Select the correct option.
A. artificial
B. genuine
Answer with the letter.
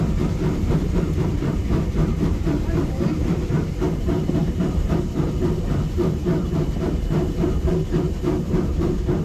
A